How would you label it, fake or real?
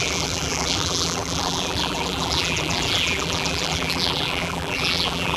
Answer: fake